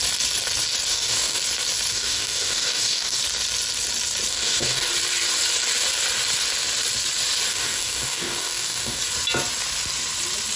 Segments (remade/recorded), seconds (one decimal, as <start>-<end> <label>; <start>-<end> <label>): 0.0-0.9 recorded; 0.9-1.4 remade; 1.4-1.9 recorded; 1.9-3.2 remade; 3.2-4.3 recorded; 4.3-4.9 remade; 4.9-7.5 recorded; 7.5-9.0 remade; 9.0-10.6 recorded